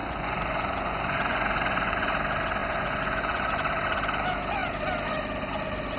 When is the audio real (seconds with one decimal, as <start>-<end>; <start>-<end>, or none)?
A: 2.1-2.6; 3.5-6.0